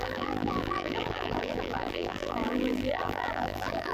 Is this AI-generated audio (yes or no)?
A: yes